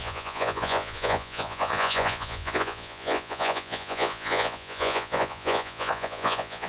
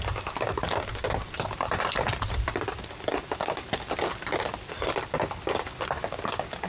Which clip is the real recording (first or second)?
second